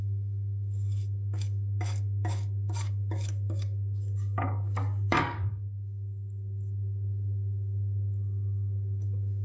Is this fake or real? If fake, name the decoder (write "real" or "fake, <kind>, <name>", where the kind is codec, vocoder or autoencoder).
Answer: fake, codec, DAC